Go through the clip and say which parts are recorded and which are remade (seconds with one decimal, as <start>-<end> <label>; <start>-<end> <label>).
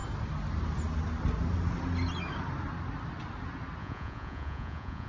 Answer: 0.0-3.8 recorded; 3.8-5.1 remade